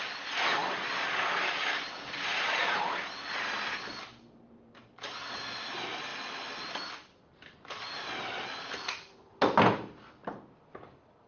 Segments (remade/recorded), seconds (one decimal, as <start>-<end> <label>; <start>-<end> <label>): 0.0-11.3 recorded